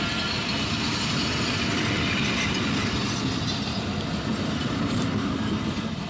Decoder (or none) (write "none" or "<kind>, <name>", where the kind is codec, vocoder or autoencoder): none